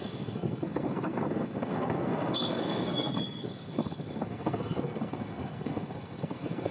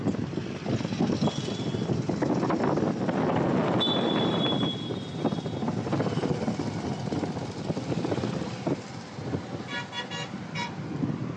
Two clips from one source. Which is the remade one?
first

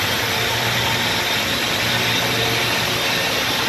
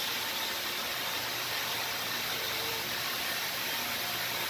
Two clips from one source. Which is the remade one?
second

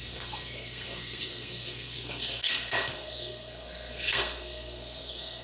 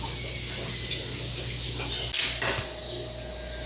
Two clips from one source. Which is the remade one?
first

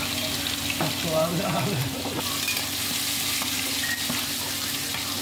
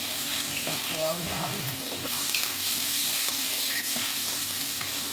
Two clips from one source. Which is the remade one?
second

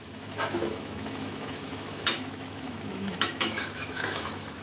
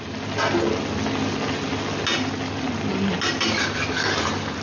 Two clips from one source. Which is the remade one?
first